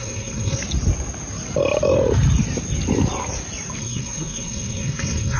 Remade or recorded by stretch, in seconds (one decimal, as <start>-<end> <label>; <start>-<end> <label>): 0.0-0.6 remade; 0.6-3.8 recorded; 3.8-5.4 remade